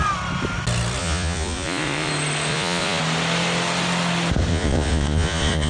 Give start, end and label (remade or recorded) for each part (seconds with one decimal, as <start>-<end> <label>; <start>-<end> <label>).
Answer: 0.0-1.0 recorded; 1.0-2.1 remade; 2.1-2.5 recorded; 2.5-3.0 remade; 3.0-4.5 recorded; 4.5-5.7 remade